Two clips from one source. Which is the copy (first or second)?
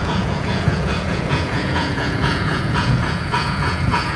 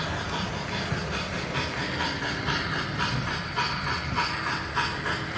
first